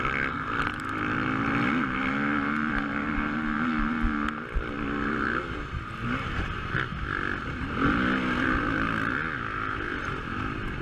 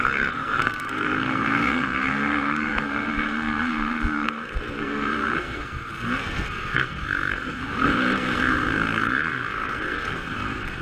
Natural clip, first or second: first